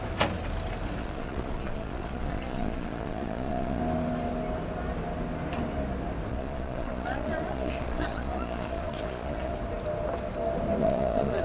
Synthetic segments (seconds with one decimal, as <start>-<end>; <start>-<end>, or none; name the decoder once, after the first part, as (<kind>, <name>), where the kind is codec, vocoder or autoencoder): 1.0-3.8 (vocoder, Vocos); 6.3-9.5; 10.8-11.4